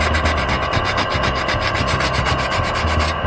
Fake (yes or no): no